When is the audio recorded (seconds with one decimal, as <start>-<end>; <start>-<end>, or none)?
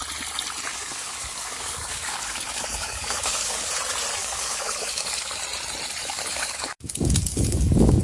0.0-0.7; 3.7-4.2; 5.4-6.0